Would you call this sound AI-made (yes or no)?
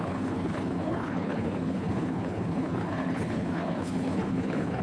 yes